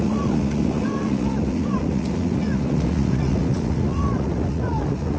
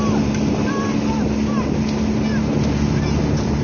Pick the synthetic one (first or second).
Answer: first